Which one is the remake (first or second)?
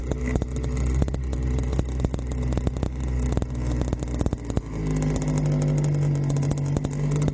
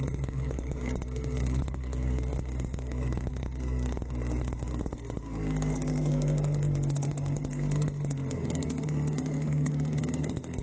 second